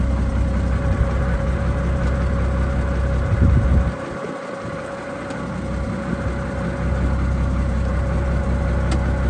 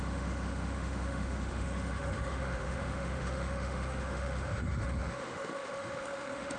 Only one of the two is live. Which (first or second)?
first